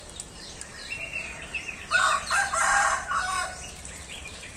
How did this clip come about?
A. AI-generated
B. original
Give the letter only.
A